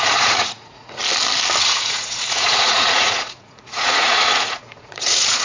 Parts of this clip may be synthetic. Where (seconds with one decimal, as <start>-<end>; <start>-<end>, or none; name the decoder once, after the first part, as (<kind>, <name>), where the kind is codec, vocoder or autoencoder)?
0.0-1.0 (vocoder, Vocos); 1.6-5.4